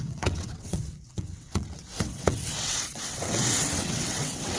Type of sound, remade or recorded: remade